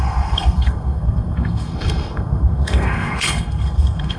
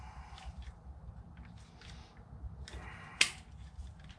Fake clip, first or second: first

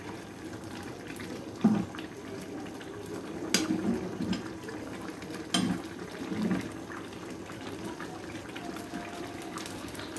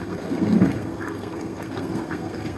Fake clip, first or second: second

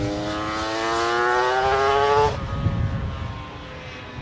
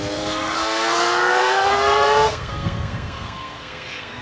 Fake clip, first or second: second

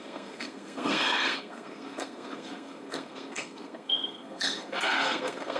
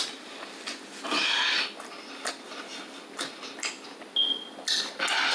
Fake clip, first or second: first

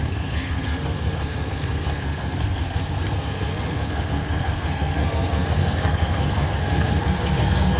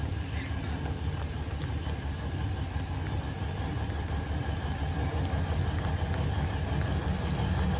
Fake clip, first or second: first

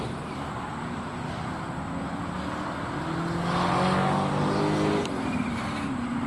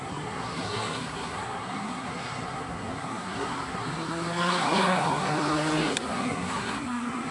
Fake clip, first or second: second